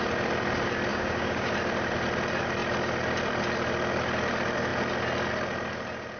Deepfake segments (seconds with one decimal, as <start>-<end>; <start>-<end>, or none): 0.9-1.5